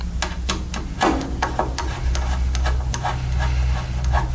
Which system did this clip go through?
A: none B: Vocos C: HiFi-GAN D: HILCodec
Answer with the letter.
A